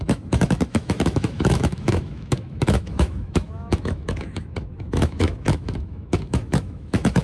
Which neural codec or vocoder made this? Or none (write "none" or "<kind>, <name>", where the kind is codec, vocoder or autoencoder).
autoencoder, DAC-VAE